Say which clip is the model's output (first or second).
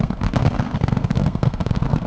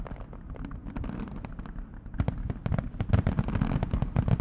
first